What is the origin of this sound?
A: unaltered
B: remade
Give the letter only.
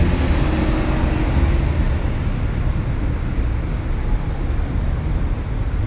A